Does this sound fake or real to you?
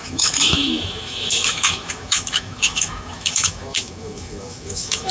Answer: fake